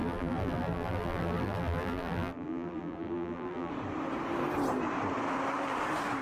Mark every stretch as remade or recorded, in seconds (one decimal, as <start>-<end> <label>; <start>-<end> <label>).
0.0-3.7 remade; 3.7-6.2 recorded